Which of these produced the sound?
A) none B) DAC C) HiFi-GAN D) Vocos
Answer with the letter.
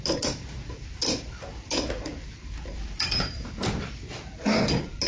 A